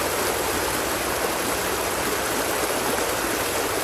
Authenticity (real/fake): real